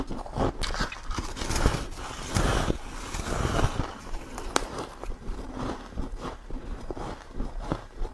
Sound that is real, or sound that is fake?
real